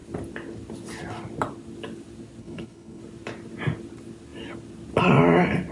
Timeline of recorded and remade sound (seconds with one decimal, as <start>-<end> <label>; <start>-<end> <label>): 0.0-2.4 recorded; 2.4-3.0 remade; 3.0-5.7 recorded